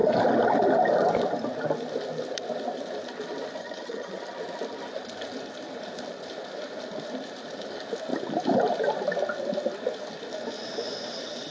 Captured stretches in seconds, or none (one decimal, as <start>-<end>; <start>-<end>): 0.0-3.6; 4.2-11.5